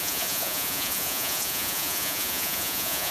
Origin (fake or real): fake